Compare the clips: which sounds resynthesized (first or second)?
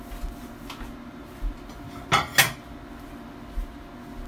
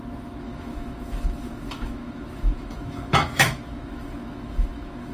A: second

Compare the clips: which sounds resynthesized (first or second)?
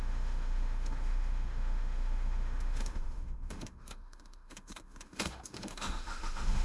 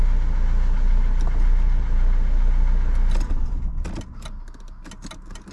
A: first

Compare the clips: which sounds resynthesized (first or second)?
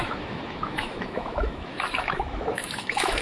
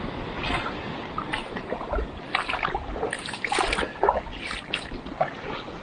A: first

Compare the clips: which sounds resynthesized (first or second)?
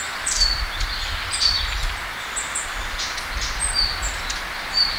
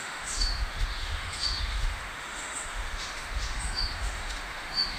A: second